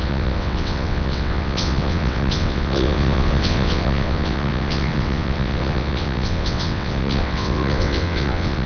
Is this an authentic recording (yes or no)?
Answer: no